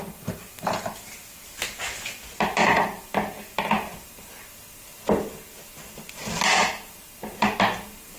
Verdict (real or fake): real